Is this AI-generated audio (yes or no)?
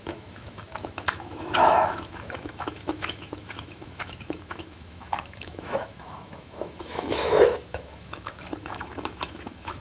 yes